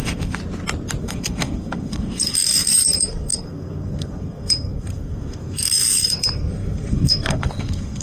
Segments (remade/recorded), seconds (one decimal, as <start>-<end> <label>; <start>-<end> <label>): 0.0-0.4 remade; 0.4-1.0 recorded; 1.0-8.0 remade